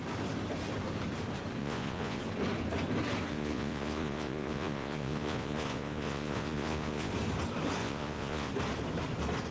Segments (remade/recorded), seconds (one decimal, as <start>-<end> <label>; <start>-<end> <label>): 0.0-1.6 recorded; 1.6-2.2 remade; 2.2-3.3 recorded; 3.3-7.1 remade; 7.1-7.8 recorded; 7.8-8.5 remade; 8.5-9.5 recorded